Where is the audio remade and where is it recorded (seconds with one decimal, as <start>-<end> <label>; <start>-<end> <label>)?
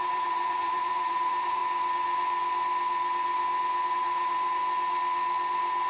0.0-1.6 remade; 1.6-3.9 recorded; 3.9-4.6 remade; 4.6-5.9 recorded